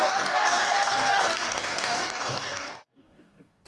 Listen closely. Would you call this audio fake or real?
fake